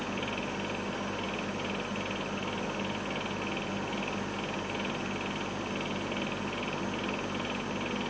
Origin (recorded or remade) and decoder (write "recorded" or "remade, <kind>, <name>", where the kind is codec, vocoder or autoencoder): recorded